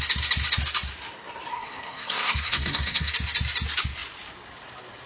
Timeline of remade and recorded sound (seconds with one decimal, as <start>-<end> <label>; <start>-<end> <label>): 0.0-1.5 recorded; 1.5-3.1 remade; 3.1-5.1 recorded

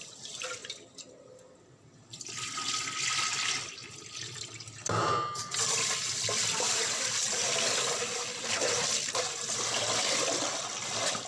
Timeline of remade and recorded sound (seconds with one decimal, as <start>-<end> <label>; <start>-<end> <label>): 0.0-11.3 recorded

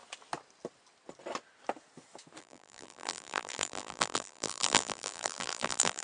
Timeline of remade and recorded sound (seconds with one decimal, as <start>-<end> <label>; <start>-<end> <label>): 0.0-2.4 recorded; 2.4-6.0 remade

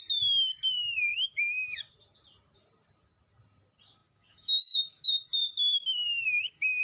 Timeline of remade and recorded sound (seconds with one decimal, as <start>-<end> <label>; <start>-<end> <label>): 0.0-1.1 recorded; 1.1-1.9 remade; 1.9-4.0 recorded; 4.0-6.8 remade

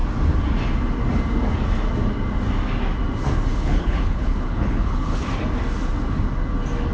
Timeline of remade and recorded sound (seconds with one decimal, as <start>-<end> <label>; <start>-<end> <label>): 0.0-3.5 recorded; 3.5-5.3 remade; 5.3-6.9 recorded

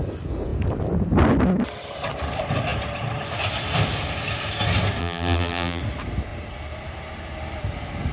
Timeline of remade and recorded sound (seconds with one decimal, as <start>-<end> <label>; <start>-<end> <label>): 0.0-5.0 recorded; 5.0-5.8 remade; 5.8-8.1 recorded

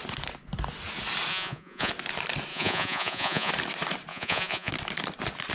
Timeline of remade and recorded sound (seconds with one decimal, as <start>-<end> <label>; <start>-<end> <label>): 0.0-1.3 recorded; 1.3-1.9 remade; 1.9-2.5 recorded; 2.5-3.5 remade; 3.5-4.1 recorded; 4.1-4.7 remade; 4.7-5.5 recorded

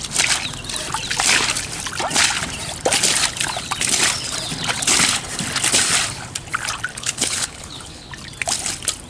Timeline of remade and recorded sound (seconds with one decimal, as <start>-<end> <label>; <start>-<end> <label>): 0.0-6.9 recorded; 6.9-8.1 remade; 8.1-9.1 recorded